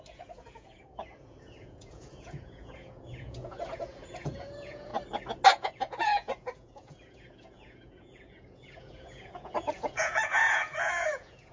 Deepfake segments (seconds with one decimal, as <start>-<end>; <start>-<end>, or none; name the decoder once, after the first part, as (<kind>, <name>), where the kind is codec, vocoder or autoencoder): 0.0-4.9 (vocoder, Vocos); 5.5-11.5